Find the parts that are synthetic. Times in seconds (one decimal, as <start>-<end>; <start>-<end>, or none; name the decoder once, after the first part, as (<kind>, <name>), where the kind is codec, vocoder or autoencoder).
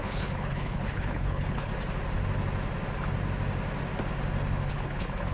0.0-1.7 (codec, HILCodec); 4.7-5.3